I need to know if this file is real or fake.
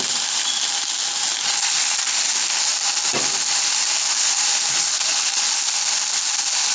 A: real